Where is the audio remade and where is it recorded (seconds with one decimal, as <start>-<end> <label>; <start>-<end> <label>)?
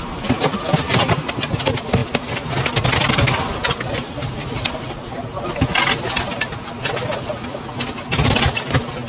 0.0-9.1 recorded